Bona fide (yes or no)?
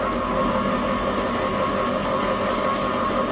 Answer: yes